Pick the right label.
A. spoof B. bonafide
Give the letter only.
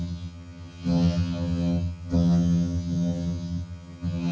A